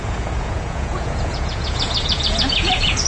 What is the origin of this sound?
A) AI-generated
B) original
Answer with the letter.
A